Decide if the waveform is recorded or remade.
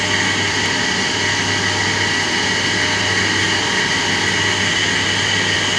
recorded